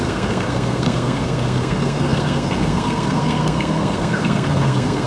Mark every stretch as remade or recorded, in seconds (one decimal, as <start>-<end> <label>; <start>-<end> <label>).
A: 0.0-5.1 remade